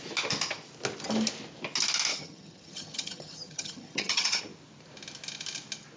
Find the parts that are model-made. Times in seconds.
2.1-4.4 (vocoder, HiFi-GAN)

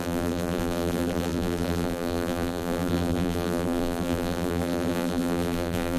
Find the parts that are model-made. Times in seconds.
0.0-6.0 (vocoder, BigVGAN v2)

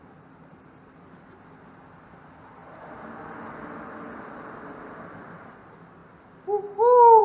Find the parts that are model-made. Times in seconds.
none

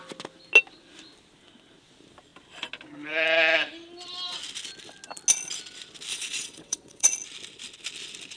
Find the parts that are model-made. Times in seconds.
6.1-7.1 (vocoder, WaveNeXt)

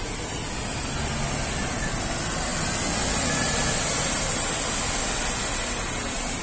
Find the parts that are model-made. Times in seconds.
none

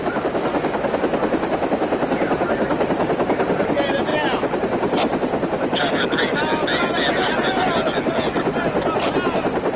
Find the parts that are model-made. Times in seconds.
none